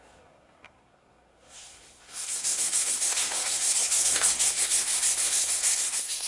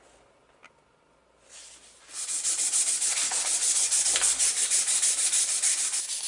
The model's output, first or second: first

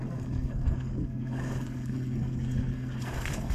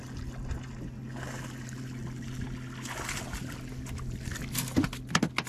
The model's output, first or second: first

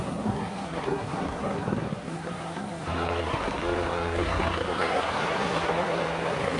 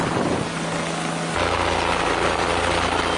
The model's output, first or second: first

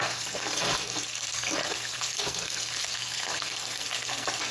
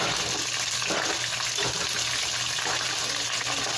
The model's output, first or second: first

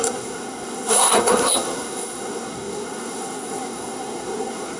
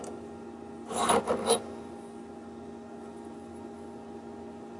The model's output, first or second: first